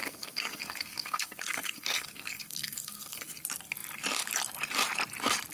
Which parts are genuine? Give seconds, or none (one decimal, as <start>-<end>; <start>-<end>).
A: 3.3-5.5